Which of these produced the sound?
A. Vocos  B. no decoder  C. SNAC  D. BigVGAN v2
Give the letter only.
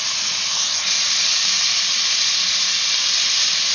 B